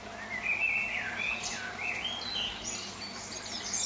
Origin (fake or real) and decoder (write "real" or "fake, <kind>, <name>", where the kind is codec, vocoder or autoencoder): real